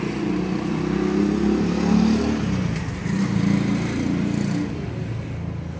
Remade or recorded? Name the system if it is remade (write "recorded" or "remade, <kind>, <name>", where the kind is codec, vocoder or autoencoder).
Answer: recorded